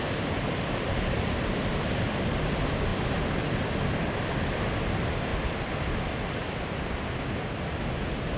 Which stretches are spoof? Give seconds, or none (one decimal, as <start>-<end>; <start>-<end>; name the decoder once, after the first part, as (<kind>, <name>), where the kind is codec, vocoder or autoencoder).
none